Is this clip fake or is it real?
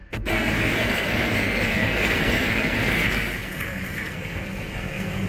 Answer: fake